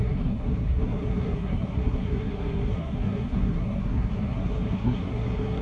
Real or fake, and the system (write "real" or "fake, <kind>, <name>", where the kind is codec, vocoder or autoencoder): fake, codec, SNAC